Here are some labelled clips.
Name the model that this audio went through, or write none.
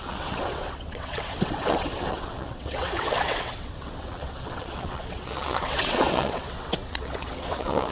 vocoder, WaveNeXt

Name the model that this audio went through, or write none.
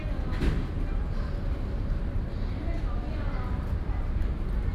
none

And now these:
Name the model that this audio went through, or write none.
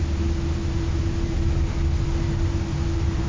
none